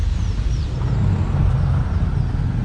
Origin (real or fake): real